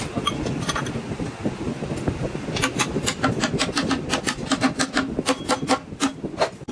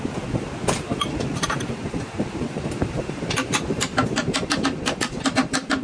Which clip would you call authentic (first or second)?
first